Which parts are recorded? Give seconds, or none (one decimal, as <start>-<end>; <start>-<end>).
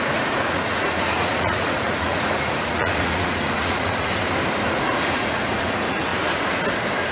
4.1-4.7; 6.1-7.1